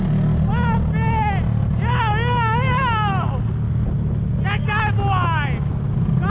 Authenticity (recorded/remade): recorded